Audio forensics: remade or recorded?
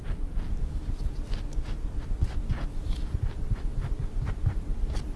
recorded